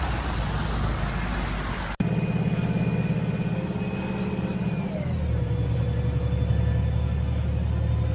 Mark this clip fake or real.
real